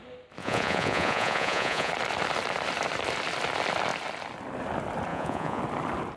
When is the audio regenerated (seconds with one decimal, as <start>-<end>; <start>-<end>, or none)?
0.4-1.9; 5.1-5.6